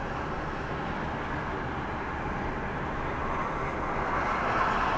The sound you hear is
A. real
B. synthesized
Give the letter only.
A